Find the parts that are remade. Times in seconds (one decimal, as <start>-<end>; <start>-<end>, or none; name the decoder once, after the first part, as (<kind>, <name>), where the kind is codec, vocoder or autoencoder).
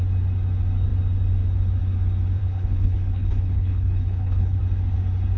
2.4-4.6 (codec, HILCodec)